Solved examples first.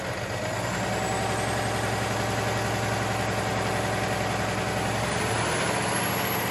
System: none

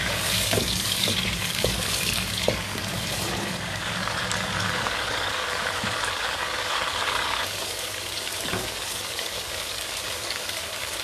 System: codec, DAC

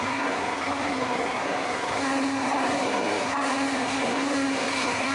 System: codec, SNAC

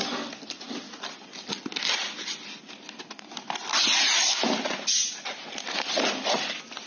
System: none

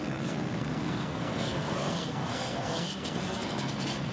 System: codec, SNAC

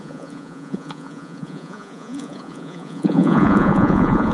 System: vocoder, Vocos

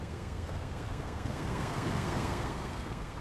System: codec, SNAC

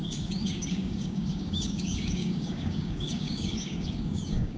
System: codec, DAC